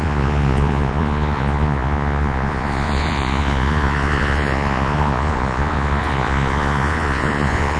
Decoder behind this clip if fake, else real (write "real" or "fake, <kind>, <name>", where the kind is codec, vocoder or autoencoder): fake, vocoder, Vocos